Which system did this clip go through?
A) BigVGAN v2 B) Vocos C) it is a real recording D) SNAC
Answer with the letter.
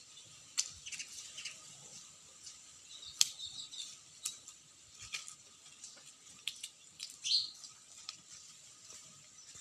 A